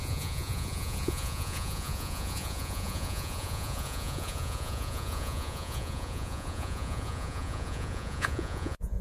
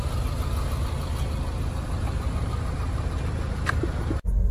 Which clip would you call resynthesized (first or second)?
first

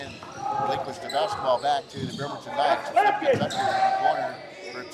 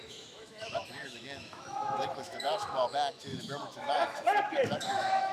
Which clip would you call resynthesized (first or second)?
second